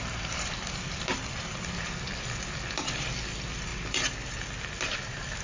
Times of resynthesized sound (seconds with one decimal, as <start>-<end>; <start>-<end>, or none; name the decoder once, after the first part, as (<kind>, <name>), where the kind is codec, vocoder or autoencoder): none